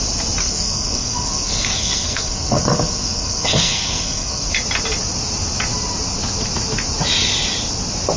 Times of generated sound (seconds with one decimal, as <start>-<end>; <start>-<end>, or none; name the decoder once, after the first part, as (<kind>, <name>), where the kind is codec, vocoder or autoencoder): 0.4-4.5 (codec, SNAC)